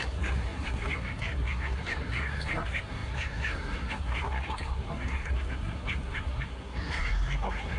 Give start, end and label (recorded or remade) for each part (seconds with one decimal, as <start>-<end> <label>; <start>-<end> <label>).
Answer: 0.0-7.8 remade